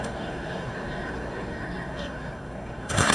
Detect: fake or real fake